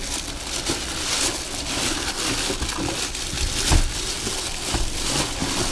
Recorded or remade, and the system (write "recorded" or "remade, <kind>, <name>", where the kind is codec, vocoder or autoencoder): recorded